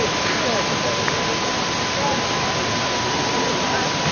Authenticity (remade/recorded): recorded